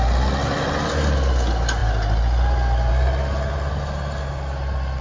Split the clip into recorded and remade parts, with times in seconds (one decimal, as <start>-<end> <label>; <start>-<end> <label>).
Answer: 0.0-5.0 recorded